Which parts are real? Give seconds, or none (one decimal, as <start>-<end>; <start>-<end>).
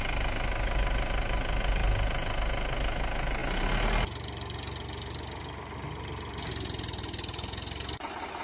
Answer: 0.0-8.4